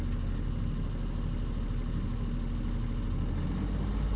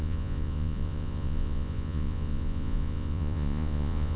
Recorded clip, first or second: first